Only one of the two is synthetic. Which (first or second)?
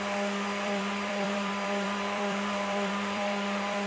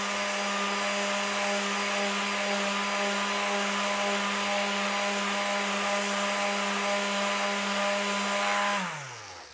first